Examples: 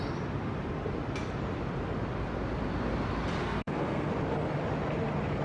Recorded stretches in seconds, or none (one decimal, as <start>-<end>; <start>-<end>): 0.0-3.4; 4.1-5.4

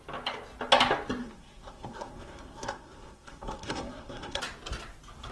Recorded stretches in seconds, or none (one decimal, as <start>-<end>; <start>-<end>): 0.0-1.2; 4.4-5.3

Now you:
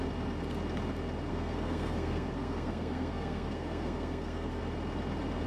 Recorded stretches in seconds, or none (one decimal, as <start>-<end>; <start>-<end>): 0.0-1.3; 4.6-5.5

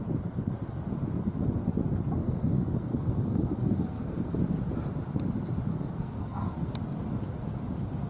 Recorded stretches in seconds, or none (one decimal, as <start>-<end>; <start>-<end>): 0.0-2.2; 4.4-5.7; 6.7-8.1

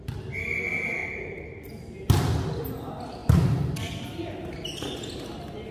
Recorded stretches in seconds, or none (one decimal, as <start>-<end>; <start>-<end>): 0.0-5.7